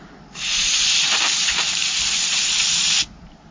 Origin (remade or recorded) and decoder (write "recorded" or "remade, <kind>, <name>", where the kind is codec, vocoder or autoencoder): recorded